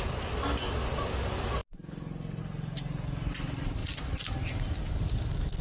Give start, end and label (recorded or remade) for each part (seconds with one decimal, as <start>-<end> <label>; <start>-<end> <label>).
0.0-5.6 recorded